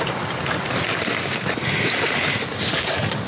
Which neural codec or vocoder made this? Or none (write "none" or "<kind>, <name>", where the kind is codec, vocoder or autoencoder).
none